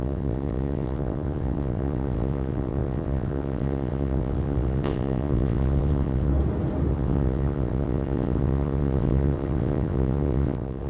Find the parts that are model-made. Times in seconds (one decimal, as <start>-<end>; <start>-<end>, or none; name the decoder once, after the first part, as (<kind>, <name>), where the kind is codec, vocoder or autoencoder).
0.0-6.3 (vocoder, WaveNeXt); 6.9-10.9